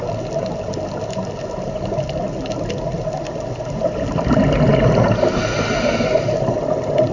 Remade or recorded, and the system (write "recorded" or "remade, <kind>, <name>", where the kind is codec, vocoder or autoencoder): recorded